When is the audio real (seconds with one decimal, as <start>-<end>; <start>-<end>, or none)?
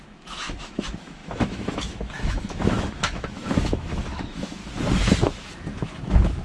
4.6-5.2